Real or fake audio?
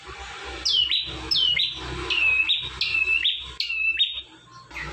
real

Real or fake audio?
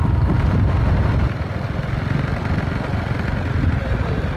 real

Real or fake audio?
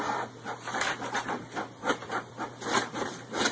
fake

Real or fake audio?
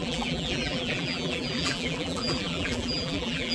fake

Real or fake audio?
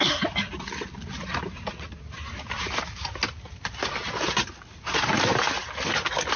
real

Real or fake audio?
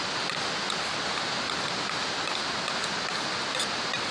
real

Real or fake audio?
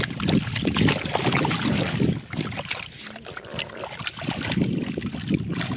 real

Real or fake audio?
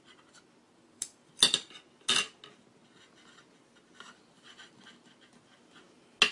real